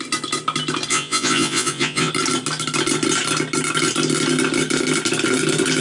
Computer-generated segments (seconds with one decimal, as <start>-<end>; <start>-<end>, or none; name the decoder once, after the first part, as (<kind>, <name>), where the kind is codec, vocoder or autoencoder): 0.9-2.1 (vocoder, Vocos)